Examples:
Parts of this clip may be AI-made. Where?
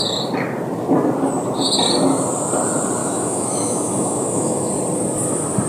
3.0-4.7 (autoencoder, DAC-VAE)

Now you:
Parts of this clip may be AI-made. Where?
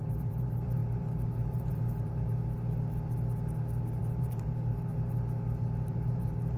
0.0-2.4 (vocoder, BigVGAN v2); 4.0-4.9; 5.9-6.6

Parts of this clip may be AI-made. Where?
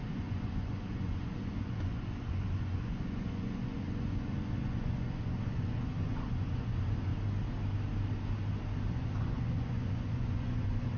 0.0-7.1 (vocoder, Vocos); 8.9-11.0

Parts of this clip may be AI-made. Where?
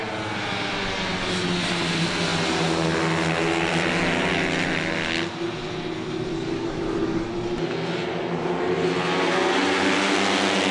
6.3-7.3 (codec, DAC)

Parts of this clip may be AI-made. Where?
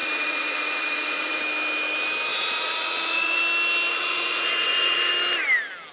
0.0-1.4 (vocoder, Vocos); 2.3-3.4; 3.9-5.1